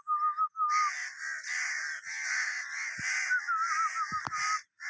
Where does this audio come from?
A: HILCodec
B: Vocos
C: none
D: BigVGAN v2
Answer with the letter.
C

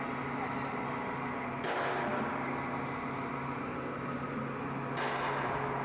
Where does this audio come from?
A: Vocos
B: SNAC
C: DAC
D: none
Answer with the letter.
D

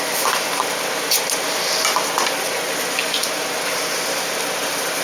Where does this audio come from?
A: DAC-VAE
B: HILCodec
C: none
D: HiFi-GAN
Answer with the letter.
C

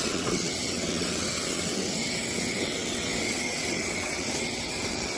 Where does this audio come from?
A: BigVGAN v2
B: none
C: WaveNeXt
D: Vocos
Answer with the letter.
C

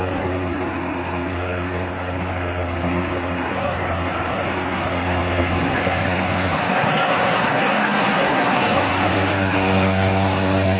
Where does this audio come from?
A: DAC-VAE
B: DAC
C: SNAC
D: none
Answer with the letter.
C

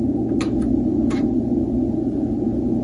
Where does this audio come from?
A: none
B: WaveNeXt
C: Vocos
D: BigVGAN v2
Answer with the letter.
A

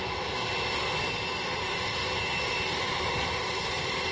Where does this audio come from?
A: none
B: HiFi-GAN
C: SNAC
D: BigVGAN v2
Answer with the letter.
A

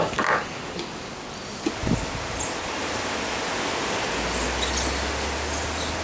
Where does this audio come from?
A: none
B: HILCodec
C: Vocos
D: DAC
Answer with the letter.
A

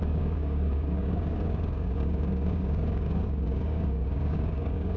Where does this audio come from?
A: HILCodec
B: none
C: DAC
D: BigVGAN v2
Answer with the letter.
C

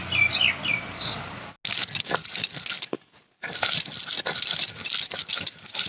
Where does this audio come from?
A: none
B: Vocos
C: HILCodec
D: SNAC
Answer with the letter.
A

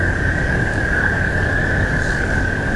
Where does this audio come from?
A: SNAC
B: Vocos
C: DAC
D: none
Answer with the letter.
C